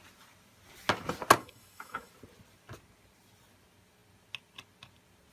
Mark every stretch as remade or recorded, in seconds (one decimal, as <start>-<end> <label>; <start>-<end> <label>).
0.0-1.4 recorded; 1.4-2.1 remade; 2.1-5.3 recorded